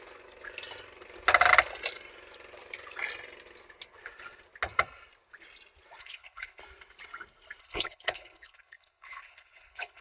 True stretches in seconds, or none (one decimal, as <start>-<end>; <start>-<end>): 0.0-6.0; 6.6-7.6